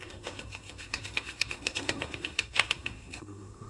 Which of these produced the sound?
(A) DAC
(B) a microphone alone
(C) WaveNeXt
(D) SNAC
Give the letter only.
D